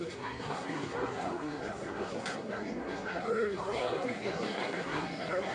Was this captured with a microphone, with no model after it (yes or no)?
no